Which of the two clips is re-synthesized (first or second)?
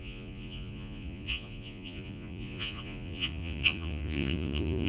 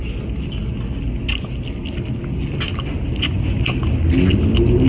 first